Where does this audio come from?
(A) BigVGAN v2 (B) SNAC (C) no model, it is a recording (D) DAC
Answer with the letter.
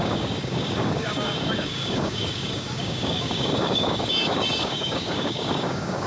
D